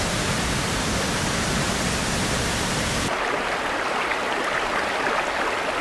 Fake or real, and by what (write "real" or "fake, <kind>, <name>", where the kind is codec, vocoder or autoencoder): real